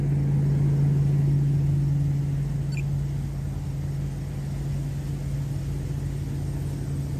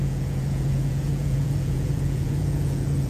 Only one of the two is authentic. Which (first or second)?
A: first